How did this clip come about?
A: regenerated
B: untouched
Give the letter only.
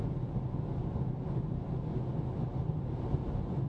B